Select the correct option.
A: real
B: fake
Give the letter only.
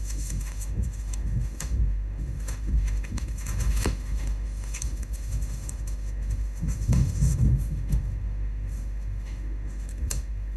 B